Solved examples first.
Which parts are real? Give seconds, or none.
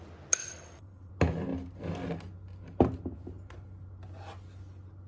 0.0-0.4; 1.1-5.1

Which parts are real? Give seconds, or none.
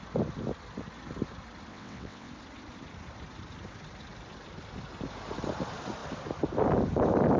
0.0-1.7; 2.3-7.4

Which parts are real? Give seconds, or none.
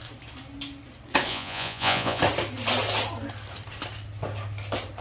0.0-1.3; 2.2-5.0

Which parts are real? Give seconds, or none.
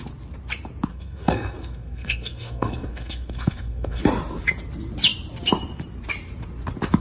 0.0-0.9; 4.0-7.0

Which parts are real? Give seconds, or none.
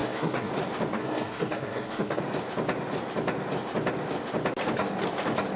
0.5-0.9; 2.2-5.6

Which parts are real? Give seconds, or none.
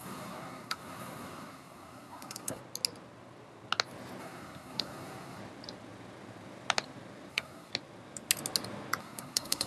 2.6-4.2; 5.4-7.3; 7.7-9.0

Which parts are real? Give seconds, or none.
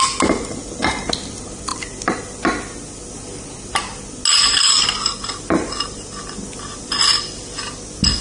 0.0-8.2